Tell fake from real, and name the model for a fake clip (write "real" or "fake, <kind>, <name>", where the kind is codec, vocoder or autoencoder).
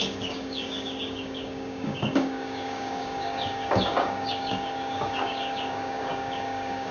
fake, codec, DAC